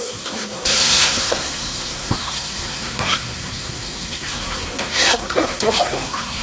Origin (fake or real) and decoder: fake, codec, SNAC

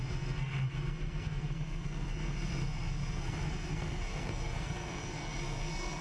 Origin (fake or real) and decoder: fake, codec, SNAC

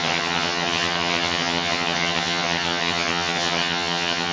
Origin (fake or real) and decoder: fake, vocoder, HiFi-GAN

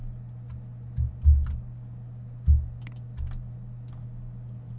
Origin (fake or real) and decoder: real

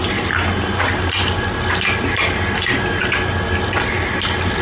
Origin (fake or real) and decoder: real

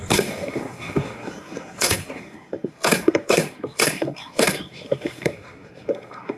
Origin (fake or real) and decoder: fake, codec, SNAC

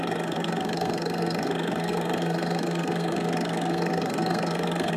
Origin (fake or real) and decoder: fake, codec, SNAC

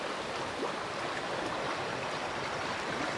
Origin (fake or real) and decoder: real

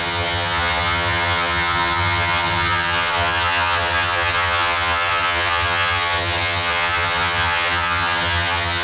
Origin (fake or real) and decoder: fake, vocoder, HiFi-GAN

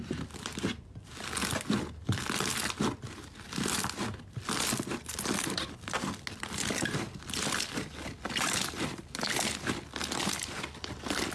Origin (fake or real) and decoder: real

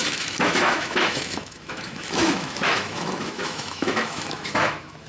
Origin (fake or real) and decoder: fake, autoencoder, DAC-VAE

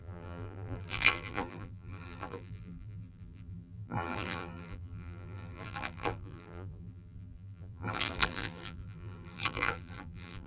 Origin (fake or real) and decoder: fake, vocoder, BigVGAN v2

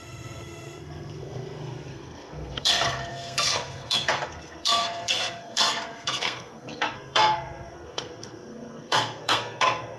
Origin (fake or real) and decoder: fake, codec, SNAC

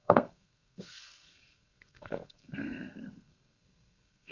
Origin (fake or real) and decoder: fake, codec, SNAC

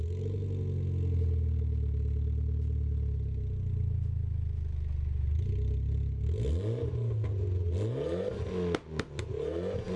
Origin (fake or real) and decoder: real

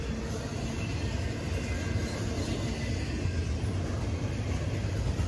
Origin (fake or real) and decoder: real